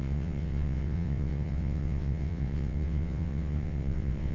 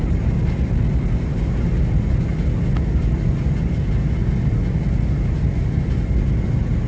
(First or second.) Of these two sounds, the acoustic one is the second